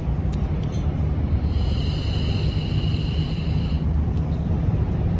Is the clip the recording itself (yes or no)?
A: yes